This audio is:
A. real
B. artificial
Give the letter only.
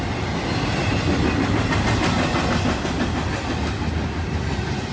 A